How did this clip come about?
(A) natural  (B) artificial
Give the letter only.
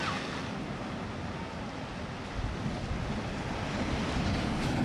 A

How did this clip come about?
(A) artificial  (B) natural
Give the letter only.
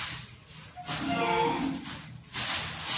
B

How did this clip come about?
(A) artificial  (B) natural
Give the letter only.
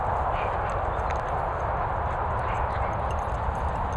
B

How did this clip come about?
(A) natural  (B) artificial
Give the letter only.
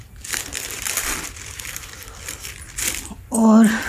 A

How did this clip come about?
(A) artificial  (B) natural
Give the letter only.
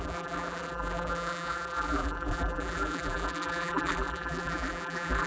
A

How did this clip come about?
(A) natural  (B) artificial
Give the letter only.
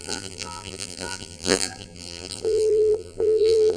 B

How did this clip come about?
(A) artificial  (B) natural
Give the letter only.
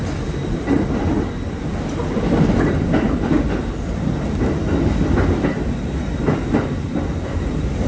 B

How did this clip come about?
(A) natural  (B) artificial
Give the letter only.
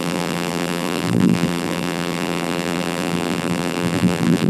B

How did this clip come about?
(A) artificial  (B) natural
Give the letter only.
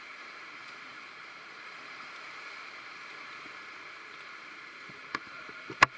A